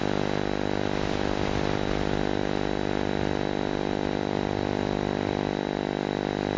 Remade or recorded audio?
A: recorded